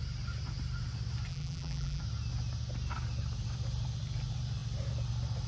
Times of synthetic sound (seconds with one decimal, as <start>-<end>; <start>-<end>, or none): 1.3-2.0